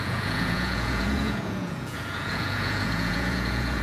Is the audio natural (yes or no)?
no